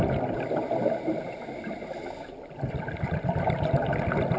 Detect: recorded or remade recorded